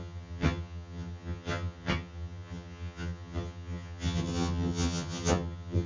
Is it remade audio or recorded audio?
remade